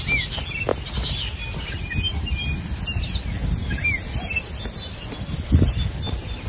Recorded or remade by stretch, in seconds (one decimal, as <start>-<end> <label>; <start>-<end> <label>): 0.0-6.5 recorded